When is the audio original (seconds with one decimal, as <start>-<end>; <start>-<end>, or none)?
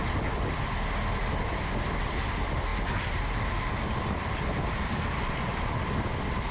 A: 2.7-3.2